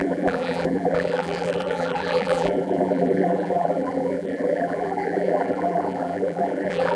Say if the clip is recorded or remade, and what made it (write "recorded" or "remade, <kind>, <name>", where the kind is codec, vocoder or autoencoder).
remade, vocoder, BigVGAN v2